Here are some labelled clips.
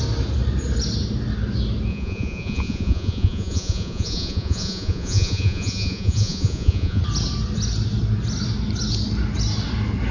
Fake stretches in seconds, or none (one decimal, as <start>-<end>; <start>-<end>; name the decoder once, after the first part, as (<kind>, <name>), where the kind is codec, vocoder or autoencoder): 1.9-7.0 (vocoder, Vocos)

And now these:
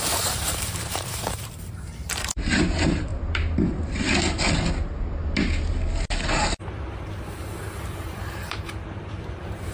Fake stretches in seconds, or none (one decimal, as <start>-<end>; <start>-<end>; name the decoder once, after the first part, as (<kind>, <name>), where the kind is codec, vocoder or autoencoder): 0.0-3.1 (vocoder, BigVGAN v2); 7.3-9.7

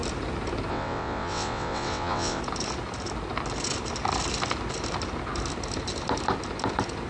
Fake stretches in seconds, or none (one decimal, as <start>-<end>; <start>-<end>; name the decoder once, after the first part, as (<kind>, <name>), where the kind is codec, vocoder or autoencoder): 0.7-2.4 (vocoder, WaveNeXt)

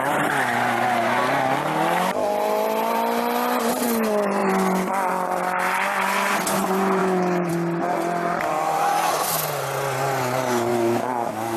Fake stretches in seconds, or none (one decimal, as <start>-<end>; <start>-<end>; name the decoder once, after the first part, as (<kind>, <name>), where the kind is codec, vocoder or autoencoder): 7.0-7.5 (autoencoder, DAC-VAE); 10.7-11.6

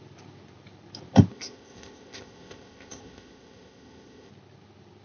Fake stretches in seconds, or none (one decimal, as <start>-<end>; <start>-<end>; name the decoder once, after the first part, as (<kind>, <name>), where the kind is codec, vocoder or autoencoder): 1.3-4.3 (codec, ZipCodec)